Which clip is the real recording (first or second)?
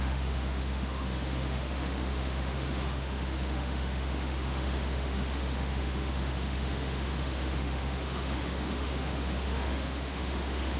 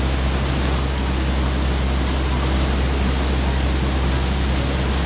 second